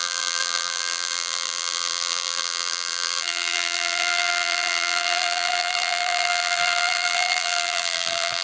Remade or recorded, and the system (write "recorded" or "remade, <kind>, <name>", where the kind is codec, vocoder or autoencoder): remade, vocoder, BigVGAN v2